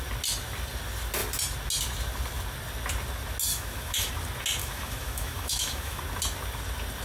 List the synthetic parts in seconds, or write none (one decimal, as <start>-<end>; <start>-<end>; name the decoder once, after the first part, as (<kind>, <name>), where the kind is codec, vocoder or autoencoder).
3.5-4.1 (autoencoder, DAC-VAE); 4.6-6.0